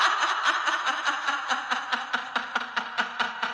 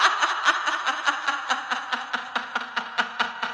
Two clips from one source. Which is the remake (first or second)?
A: first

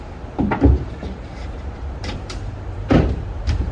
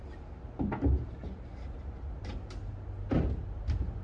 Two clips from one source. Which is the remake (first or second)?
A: first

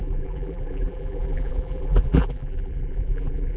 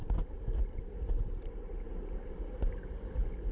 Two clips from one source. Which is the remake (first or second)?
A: first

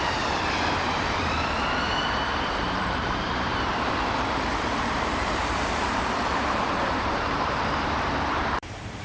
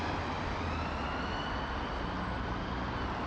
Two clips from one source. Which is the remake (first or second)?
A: first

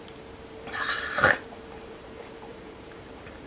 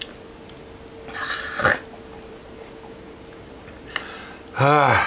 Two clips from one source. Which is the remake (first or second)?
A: first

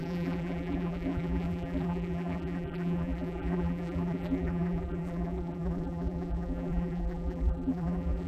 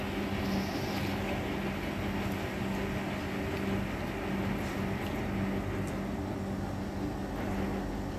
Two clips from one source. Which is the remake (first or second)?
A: first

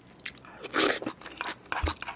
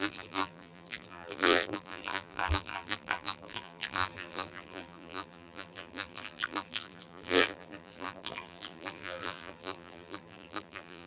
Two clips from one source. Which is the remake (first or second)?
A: second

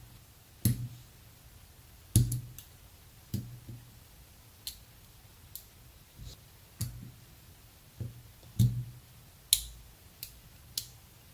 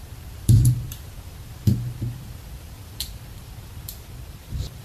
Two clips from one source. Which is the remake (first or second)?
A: second